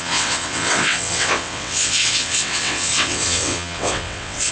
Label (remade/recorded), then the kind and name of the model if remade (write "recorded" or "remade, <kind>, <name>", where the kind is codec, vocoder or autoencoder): remade, vocoder, WaveNeXt